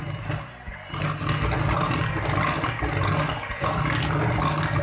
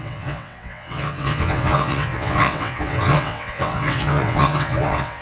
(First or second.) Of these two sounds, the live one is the first